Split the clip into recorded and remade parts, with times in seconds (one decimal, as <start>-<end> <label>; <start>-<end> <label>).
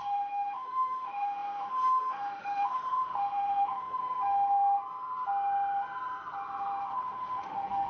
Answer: 0.0-4.0 remade; 4.0-6.8 recorded; 6.8-7.9 remade